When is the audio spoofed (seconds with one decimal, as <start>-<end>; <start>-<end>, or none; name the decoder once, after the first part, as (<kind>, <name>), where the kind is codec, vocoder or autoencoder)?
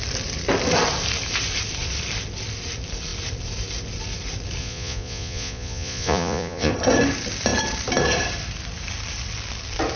4.6-6.7 (vocoder, Vocos)